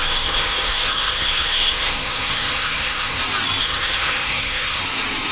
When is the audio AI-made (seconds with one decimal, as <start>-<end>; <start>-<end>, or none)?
0.0-3.2; 3.6-4.8

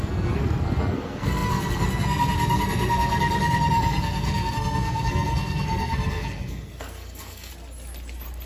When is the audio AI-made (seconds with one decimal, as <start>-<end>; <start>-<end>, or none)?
0.0-7.5

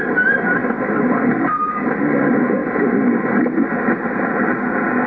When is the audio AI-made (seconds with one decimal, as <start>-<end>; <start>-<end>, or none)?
none

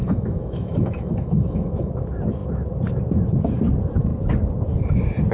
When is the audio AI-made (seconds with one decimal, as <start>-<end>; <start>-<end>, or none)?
0.0-1.9

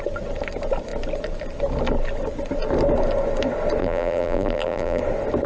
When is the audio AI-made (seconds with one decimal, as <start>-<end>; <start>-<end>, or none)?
3.8-5.0

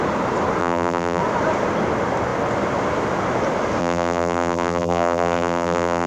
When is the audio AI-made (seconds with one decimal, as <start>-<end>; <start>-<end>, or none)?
0.6-1.2; 3.8-6.1

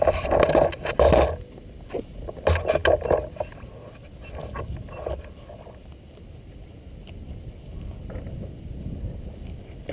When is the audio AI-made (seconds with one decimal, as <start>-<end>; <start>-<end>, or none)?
none